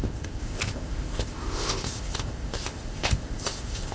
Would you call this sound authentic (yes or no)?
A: no